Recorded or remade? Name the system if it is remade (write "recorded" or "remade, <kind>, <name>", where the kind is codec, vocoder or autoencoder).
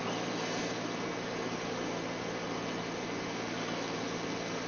recorded